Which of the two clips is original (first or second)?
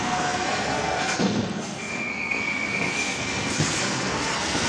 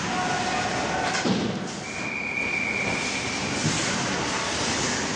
second